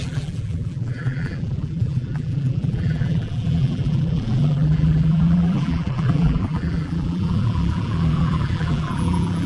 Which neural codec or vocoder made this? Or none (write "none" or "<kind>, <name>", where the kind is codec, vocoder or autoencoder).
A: vocoder, BigVGAN v2